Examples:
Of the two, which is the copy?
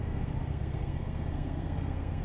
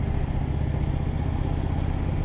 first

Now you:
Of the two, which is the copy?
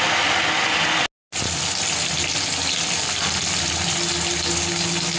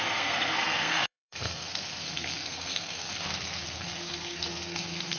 second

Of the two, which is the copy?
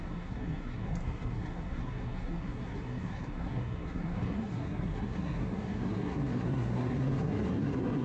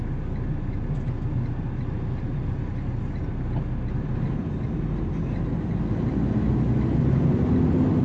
first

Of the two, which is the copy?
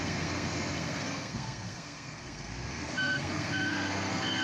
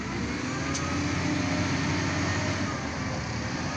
first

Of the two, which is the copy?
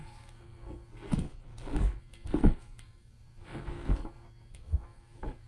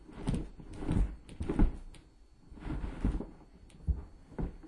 first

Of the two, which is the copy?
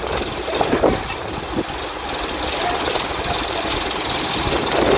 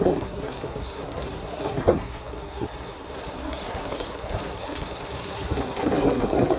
second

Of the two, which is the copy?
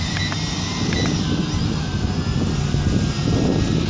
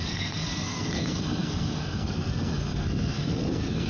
second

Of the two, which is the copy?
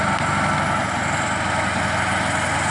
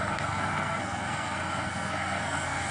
second